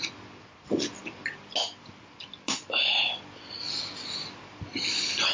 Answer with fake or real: real